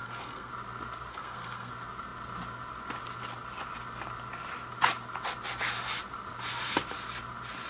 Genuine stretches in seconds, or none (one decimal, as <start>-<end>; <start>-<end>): 0.5-1.1; 1.7-7.7